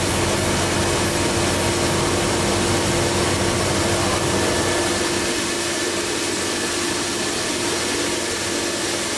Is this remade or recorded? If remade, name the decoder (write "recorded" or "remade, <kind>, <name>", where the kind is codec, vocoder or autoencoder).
recorded